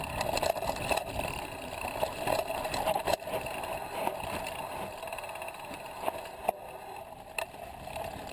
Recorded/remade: recorded